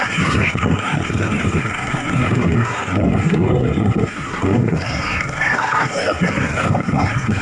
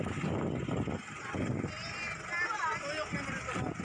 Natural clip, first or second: second